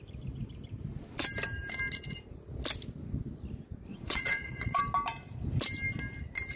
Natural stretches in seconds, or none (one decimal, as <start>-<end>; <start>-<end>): 0.0-3.9; 4.8-6.6